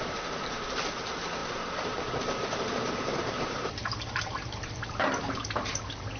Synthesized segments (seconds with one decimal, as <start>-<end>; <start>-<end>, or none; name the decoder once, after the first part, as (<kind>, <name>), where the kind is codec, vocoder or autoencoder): 0.0-6.2 (vocoder, BigVGAN v2)